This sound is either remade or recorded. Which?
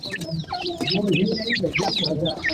remade